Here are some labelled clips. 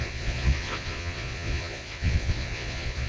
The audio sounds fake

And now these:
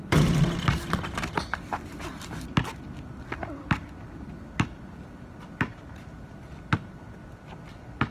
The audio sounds real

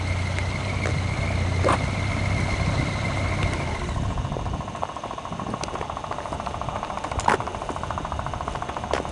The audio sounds real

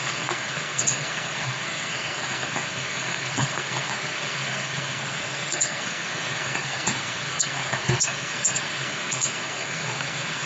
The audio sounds fake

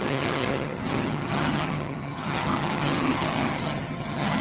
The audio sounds fake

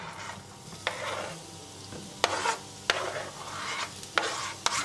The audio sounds real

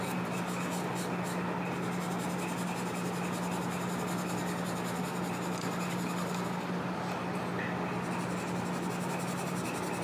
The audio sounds real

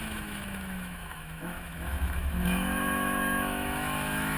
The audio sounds fake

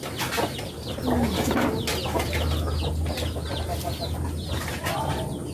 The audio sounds real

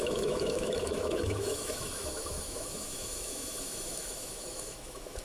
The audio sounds fake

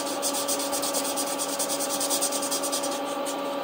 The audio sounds real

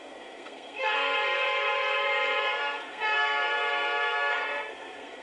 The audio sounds fake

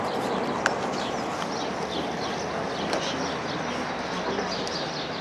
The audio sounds real